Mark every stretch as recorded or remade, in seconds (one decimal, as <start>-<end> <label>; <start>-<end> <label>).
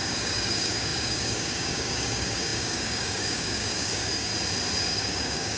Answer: 0.0-4.3 remade; 4.3-4.8 recorded; 4.8-5.6 remade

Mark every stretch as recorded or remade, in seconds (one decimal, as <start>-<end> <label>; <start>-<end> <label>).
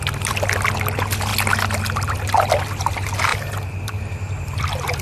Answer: 0.0-3.3 recorded; 3.3-4.6 remade; 4.6-5.0 recorded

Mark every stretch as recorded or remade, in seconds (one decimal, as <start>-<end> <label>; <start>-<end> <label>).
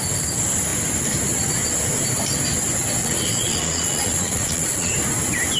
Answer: 0.0-3.0 recorded; 3.0-4.9 remade; 4.9-5.6 recorded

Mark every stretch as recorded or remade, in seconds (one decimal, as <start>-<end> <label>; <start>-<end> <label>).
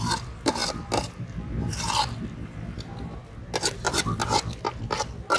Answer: 0.0-5.4 recorded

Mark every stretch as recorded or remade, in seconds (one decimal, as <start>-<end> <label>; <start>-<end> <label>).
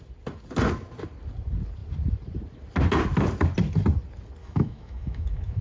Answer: 0.0-4.4 recorded; 4.4-5.6 remade